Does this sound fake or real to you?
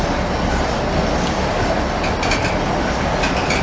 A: real